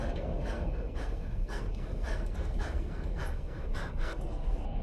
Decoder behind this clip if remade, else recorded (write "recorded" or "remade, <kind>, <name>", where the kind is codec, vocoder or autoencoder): remade, codec, SNAC